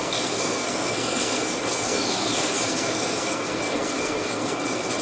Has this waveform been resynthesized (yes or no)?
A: yes